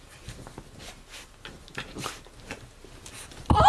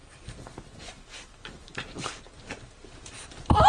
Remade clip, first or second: second